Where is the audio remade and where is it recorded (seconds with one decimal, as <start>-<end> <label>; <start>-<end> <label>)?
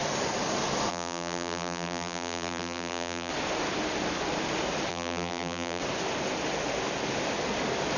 0.0-0.9 recorded; 0.9-3.3 remade; 3.3-4.9 recorded; 4.9-5.8 remade; 5.8-8.0 recorded